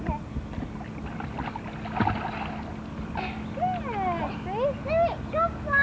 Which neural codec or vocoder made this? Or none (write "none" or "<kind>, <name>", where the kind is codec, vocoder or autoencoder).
none